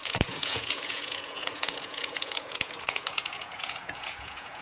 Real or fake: fake